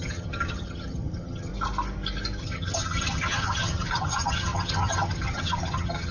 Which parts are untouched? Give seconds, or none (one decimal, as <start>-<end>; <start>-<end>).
1.5-2.4